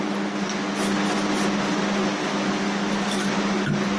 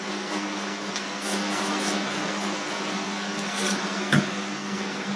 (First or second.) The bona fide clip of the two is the first